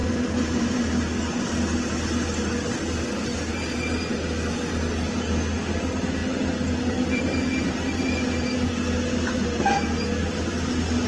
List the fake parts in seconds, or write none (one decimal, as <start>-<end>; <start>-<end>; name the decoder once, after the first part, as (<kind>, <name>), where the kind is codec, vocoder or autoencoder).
0.0-0.9 (vocoder, BigVGAN v2); 6.2-8.7